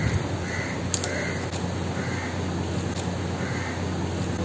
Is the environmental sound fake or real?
real